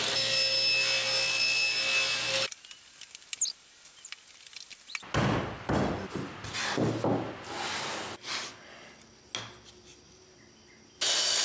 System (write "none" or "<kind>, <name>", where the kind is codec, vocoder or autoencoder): none